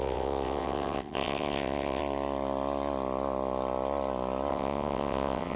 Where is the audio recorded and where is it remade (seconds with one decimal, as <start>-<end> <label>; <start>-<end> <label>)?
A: 0.0-2.0 remade; 2.0-4.5 recorded; 4.5-5.6 remade